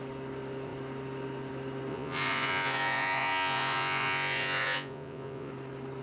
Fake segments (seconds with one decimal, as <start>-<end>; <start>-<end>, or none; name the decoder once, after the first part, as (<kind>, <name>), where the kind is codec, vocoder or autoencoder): 1.9-5.5 (vocoder, Vocos)